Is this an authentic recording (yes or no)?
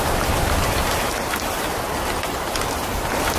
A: yes